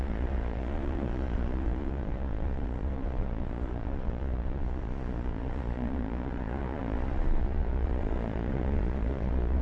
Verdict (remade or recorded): remade